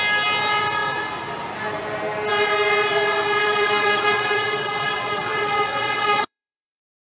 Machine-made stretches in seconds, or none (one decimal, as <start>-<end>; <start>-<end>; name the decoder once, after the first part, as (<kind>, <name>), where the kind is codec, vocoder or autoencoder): 3.4-6.8 (vocoder, WaveNeXt)

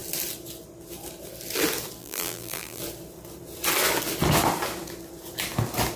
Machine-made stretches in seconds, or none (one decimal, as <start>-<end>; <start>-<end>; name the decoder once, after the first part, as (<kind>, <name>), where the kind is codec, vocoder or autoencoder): 2.0-2.8 (vocoder, BigVGAN v2)

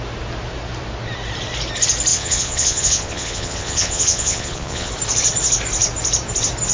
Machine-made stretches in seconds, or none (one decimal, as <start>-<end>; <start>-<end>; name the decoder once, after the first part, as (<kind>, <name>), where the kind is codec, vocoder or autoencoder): 2.1-4.9 (vocoder, Vocos)